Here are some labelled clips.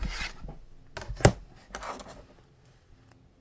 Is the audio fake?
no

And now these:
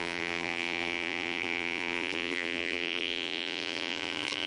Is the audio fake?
yes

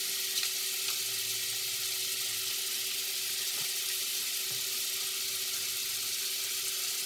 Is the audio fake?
no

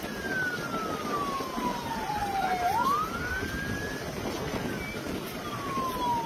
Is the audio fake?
no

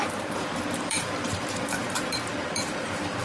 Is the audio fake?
yes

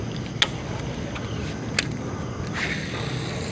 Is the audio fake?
no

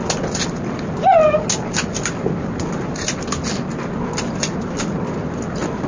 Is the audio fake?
no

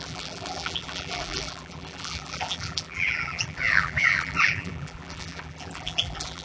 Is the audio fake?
yes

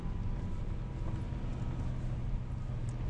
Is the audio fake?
no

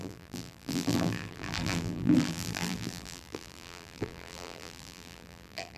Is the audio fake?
yes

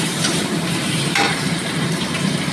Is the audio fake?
yes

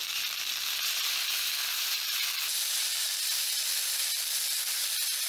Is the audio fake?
yes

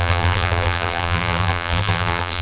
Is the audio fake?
yes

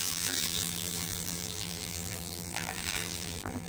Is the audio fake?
yes